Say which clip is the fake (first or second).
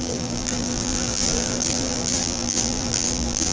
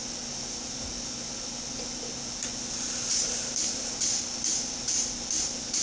first